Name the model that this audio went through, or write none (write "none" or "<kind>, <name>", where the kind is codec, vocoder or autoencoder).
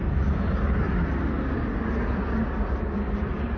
none